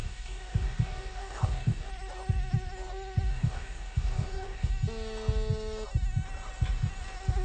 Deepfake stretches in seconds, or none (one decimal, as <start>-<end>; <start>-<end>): 0.0-1.9; 3.3-4.7